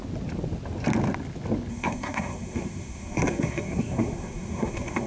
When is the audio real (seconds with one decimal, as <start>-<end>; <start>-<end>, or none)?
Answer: 0.0-1.7